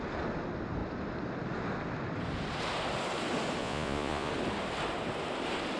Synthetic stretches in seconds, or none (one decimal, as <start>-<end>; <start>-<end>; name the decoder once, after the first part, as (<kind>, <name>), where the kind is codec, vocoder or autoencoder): 3.6-4.3 (vocoder, Vocos)